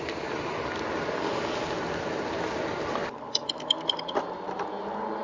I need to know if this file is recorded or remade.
recorded